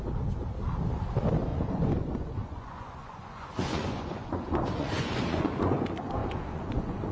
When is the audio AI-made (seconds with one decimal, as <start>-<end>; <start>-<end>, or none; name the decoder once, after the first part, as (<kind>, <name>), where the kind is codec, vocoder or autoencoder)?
1.5-5.8 (vocoder, Vocos); 6.2-7.1